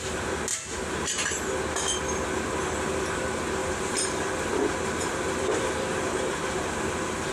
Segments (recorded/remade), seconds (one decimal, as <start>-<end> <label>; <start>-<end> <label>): 0.0-3.6 recorded; 3.6-7.3 remade